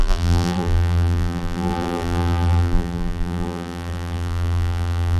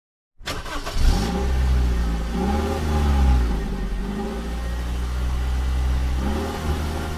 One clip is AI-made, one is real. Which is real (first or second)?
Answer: second